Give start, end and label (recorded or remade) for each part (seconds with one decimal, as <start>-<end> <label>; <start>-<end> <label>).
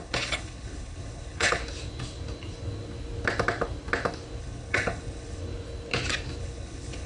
0.0-1.6 remade; 1.6-4.4 recorded; 4.4-5.4 remade; 5.4-6.4 recorded; 6.4-7.1 remade